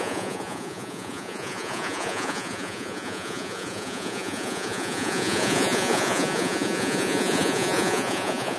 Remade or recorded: remade